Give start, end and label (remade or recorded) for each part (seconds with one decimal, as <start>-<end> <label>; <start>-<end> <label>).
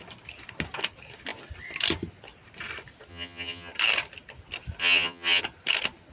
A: 0.0-3.1 recorded; 3.1-3.7 remade; 3.7-4.8 recorded; 4.8-5.4 remade; 5.4-6.1 recorded